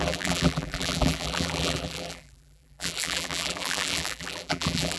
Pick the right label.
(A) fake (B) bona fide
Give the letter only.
A